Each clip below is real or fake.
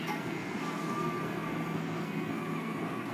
fake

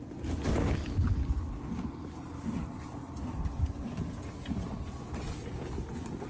real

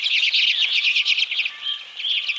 real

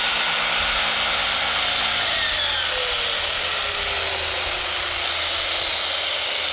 real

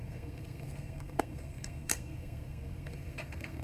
fake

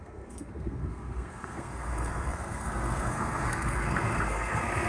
fake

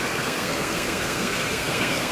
fake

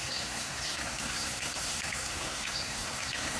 fake